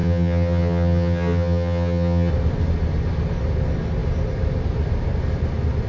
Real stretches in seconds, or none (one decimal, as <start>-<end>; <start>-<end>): 2.3-5.9